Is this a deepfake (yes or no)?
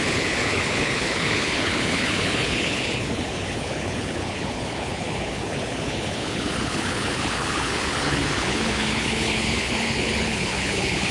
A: yes